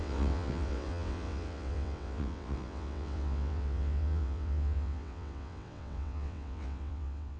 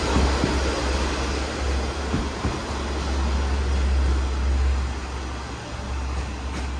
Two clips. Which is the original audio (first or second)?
second